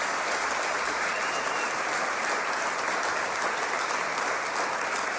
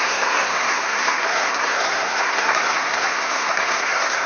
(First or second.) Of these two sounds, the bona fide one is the first